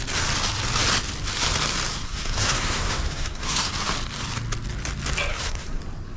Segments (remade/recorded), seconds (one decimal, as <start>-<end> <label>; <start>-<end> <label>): 0.0-1.9 recorded; 1.9-3.7 remade; 3.7-5.3 recorded; 5.3-5.8 remade; 5.8-6.2 recorded